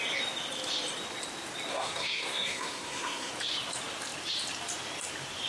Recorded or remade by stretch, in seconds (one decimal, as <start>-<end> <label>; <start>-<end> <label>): 0.0-1.7 recorded; 1.7-3.3 remade; 3.3-5.5 recorded